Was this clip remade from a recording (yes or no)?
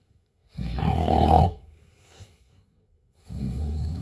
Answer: yes